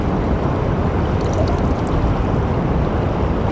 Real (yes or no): yes